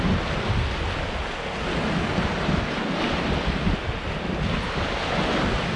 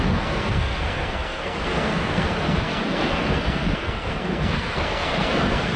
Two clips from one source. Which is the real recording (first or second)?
first